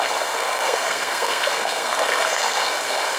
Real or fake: fake